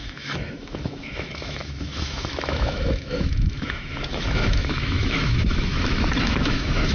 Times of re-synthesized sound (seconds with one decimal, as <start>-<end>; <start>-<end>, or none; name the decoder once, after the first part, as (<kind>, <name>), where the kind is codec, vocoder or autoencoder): 0.0-6.9 (autoencoder, DAC-VAE)